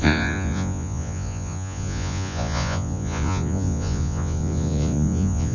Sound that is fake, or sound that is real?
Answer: fake